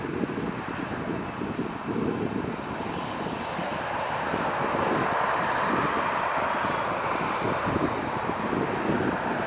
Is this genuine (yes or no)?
yes